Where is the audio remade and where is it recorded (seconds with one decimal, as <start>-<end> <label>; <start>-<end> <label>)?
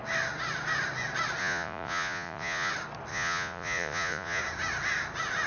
0.0-1.4 recorded; 1.4-2.7 remade; 2.7-3.1 recorded; 3.1-4.4 remade; 4.4-5.5 recorded